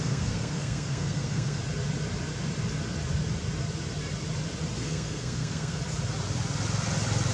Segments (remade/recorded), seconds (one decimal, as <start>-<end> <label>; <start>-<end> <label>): 0.0-1.6 remade; 1.6-4.8 recorded; 4.8-5.8 remade; 5.8-7.3 recorded